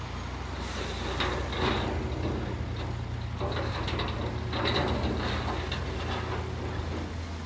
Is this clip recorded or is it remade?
recorded